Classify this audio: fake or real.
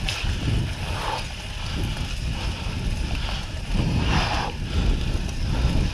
real